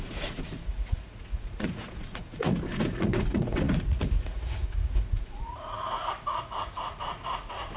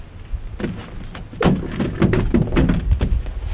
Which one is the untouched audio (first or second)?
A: second